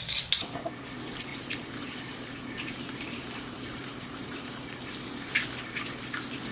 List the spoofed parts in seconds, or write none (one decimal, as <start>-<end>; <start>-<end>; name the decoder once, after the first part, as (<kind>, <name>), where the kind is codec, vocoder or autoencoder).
1.3-4.9 (vocoder, BigVGAN v2)